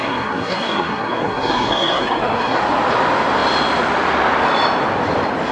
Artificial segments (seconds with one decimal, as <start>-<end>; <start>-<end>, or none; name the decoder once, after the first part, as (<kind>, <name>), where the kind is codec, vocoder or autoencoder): 0.0-2.6 (codec, SNAC)